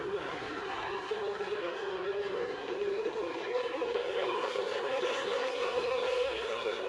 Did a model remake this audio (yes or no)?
yes